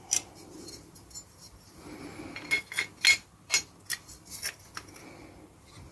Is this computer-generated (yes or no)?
no